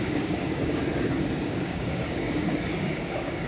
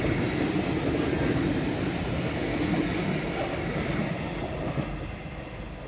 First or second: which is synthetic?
first